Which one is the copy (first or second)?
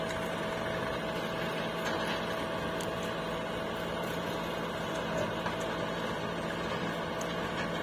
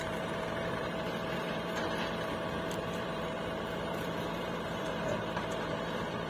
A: second